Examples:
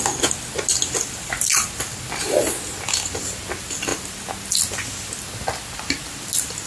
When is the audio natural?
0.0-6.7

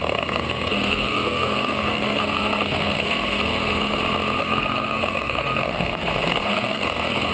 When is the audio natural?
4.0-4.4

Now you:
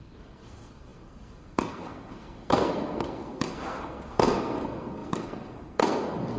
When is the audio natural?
none